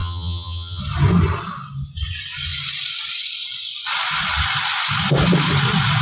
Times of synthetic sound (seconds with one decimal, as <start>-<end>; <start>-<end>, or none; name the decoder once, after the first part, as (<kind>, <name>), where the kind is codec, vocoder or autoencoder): 0.0-0.8 (vocoder, HiFi-GAN)